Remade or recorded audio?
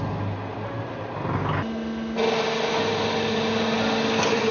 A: recorded